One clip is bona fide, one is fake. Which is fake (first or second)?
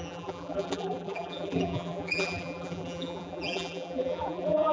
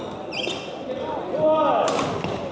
first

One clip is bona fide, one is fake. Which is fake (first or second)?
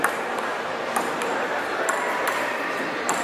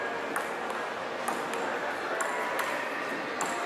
first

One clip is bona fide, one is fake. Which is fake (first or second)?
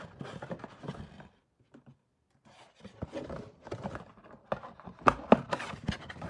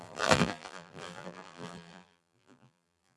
second